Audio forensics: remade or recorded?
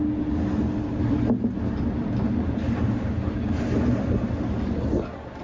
recorded